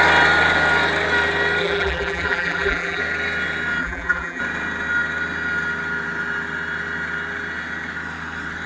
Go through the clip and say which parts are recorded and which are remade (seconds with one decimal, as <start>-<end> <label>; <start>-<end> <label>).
0.0-1.6 recorded; 1.6-3.0 remade; 3.0-3.8 recorded; 3.8-4.4 remade; 4.4-8.7 recorded